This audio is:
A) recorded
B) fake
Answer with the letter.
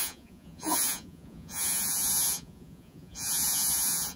B